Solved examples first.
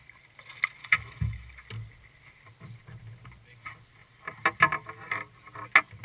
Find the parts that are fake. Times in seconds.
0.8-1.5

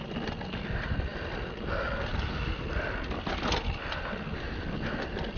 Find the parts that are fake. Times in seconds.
none

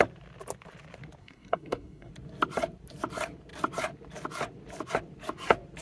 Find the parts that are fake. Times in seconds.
1.2-2.1